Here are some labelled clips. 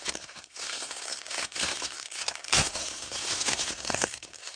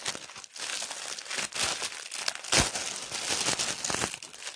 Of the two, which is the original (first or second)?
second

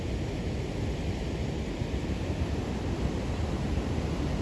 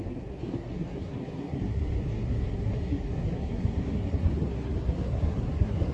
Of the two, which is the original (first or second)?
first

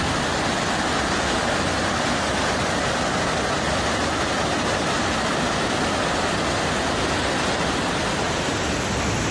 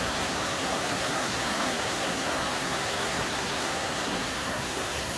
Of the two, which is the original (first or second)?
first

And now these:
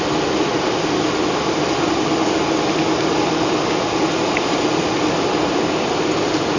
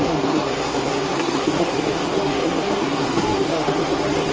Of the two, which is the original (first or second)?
first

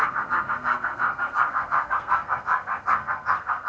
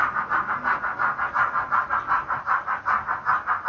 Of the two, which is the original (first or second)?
second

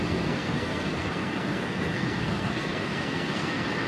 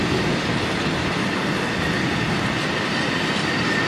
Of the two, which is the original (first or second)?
second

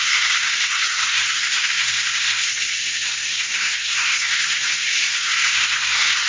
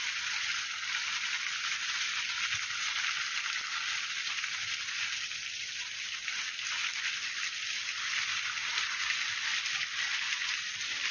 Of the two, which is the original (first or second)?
second